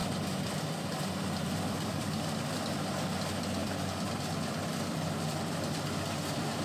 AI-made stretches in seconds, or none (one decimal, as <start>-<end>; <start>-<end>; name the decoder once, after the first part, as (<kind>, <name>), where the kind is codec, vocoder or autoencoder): 0.0-2.6 (vocoder, BigVGAN v2); 3.6-4.2